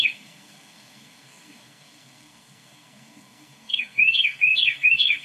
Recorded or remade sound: remade